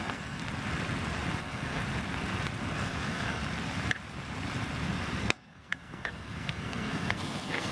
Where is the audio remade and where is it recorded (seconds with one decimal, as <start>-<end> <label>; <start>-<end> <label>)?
0.0-0.4 remade; 0.4-1.4 recorded; 1.4-1.8 remade; 1.8-2.6 recorded; 2.6-3.4 remade; 3.4-5.2 recorded; 5.2-7.7 remade